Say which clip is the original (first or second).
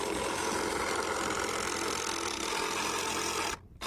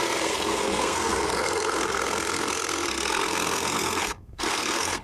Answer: first